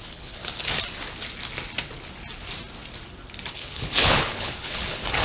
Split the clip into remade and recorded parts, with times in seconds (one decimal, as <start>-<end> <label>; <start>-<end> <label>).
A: 0.0-0.4 remade; 0.4-3.5 recorded; 3.5-5.2 remade